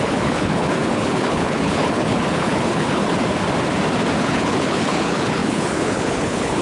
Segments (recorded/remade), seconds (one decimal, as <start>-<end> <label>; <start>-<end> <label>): 0.0-3.1 remade; 3.1-4.2 recorded; 4.2-6.6 remade